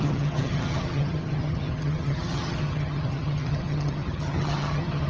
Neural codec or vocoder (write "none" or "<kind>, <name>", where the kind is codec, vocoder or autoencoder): vocoder, HiFi-GAN